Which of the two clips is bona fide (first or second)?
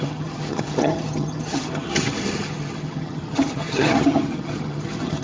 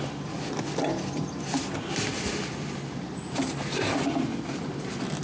second